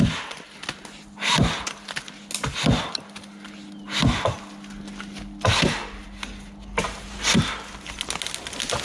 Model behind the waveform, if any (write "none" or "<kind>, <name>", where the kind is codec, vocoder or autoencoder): none